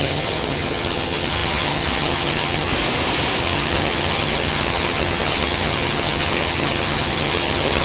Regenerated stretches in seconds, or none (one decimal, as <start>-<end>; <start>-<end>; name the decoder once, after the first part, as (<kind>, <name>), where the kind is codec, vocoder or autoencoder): 0.0-2.7 (vocoder, HiFi-GAN); 3.4-7.8